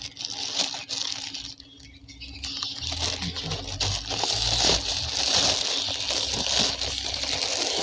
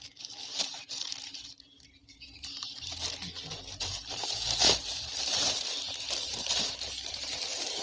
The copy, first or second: second